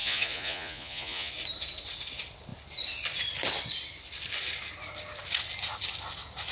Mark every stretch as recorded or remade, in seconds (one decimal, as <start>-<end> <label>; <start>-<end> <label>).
0.0-1.3 remade; 1.3-6.5 recorded